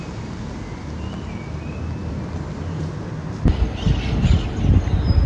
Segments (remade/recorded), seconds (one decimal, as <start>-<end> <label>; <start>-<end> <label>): 0.0-2.0 recorded; 2.0-2.9 remade; 2.9-5.3 recorded